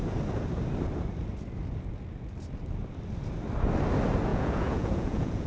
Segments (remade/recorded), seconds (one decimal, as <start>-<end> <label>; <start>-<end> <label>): 0.0-4.3 recorded; 4.3-5.5 remade